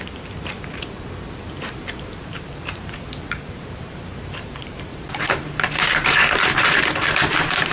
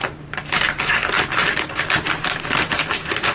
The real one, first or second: second